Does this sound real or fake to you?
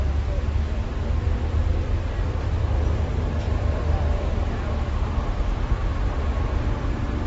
real